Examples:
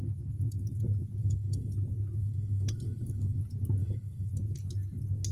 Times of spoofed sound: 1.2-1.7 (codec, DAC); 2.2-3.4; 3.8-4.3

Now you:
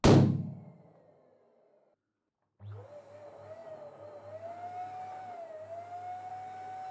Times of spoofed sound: none

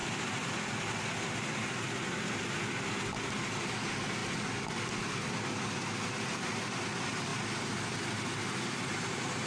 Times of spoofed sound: none